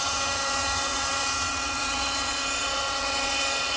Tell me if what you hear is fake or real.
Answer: fake